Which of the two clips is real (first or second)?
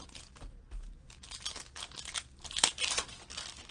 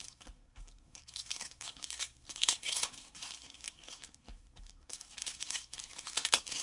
first